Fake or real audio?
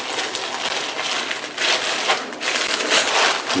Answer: real